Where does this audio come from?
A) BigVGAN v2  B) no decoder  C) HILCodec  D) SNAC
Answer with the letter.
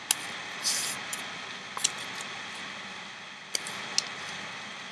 B